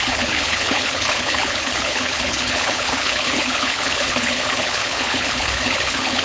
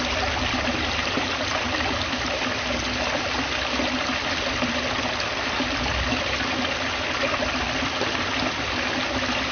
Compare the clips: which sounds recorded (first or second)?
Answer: second